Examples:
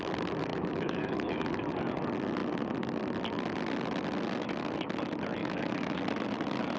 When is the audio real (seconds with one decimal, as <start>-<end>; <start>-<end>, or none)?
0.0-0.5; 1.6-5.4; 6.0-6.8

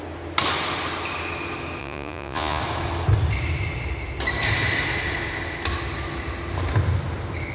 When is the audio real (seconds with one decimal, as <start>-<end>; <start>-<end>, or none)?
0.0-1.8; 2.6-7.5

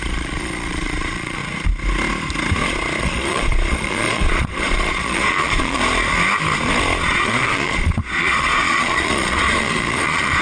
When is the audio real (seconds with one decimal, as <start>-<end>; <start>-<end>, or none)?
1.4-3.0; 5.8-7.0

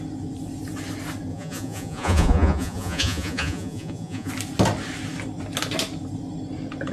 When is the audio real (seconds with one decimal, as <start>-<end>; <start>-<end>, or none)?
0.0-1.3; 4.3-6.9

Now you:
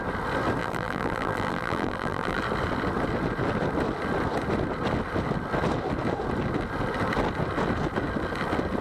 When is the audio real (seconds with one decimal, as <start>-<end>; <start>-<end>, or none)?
0.0-0.6; 2.4-8.8